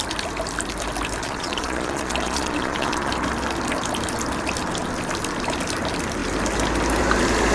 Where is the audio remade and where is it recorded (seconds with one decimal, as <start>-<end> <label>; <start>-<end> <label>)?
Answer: 0.0-1.2 recorded; 1.2-3.1 remade; 3.1-7.5 recorded